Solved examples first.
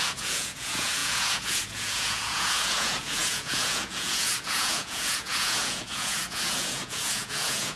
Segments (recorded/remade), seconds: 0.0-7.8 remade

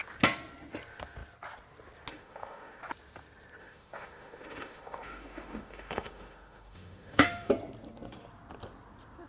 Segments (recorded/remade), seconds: 0.0-2.1 recorded; 2.1-2.8 remade; 2.8-3.6 recorded; 3.6-7.5 remade; 7.5-9.3 recorded